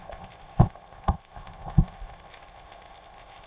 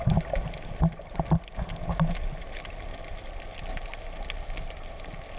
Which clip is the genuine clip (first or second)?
second